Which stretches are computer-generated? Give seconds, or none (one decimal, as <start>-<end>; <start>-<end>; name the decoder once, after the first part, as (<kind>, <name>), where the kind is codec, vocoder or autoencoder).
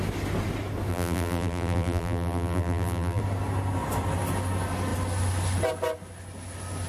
0.9-3.2 (vocoder, BigVGAN v2)